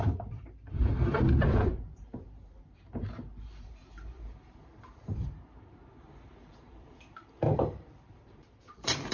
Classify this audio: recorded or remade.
remade